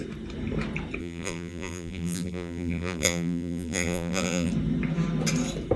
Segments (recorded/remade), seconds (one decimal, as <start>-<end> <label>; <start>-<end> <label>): 0.0-1.0 recorded; 1.0-4.5 remade; 4.5-5.8 recorded